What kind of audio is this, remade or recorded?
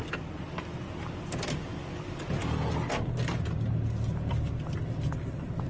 recorded